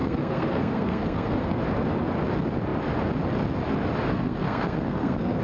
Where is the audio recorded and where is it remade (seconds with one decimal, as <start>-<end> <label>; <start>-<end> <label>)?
0.0-1.6 remade; 1.6-4.1 recorded; 4.1-5.4 remade